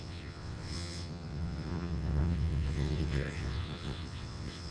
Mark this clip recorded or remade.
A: remade